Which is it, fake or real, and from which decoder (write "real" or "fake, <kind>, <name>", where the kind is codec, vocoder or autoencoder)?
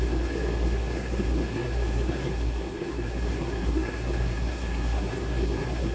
fake, codec, SNAC